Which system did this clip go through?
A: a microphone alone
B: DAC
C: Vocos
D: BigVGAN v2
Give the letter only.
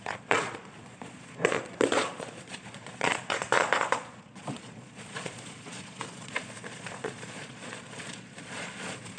C